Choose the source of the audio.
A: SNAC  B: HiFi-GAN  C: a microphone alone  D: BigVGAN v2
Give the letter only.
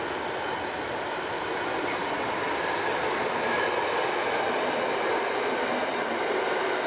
C